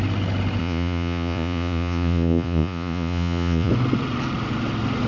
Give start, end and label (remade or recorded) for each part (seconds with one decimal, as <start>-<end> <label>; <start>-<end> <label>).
0.0-0.6 recorded; 0.6-3.7 remade; 3.7-5.1 recorded